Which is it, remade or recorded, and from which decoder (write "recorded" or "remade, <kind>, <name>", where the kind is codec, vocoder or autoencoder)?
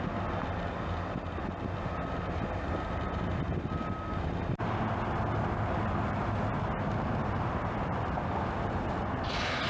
recorded